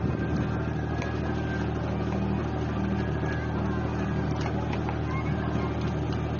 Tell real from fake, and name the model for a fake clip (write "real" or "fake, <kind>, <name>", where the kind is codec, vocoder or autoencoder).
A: real